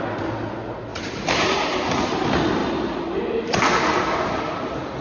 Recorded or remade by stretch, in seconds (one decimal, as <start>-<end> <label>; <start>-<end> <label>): 0.0-0.9 recorded; 0.9-2.2 remade; 2.2-5.0 recorded